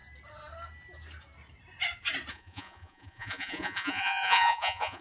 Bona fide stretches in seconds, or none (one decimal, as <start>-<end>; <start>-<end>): 0.0-2.3